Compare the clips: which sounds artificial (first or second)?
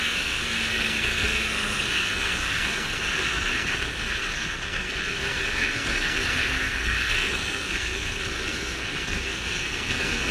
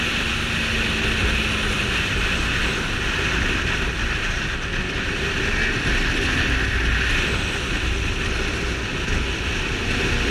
first